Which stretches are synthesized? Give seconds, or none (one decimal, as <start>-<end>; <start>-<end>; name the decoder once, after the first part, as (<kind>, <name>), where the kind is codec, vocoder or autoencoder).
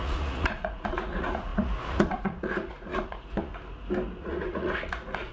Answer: 0.0-3.5 (vocoder, Vocos); 4.2-5.3